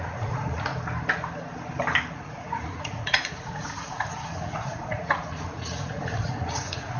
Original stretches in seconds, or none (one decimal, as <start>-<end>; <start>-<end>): 0.7-2.1